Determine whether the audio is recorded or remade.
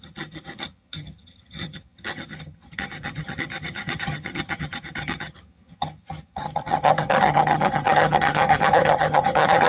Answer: remade